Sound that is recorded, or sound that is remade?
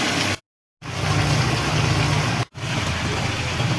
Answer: recorded